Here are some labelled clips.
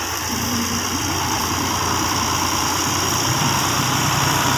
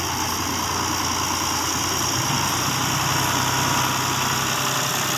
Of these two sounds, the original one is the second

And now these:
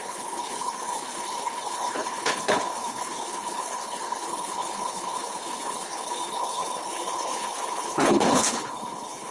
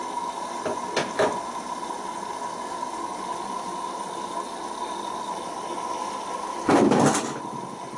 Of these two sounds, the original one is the second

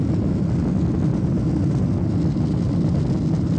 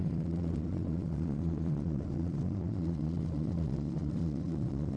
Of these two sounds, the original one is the first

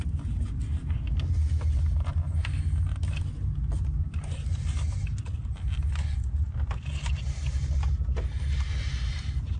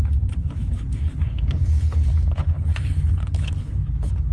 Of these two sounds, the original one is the first